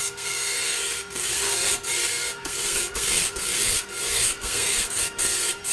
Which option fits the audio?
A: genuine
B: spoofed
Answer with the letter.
B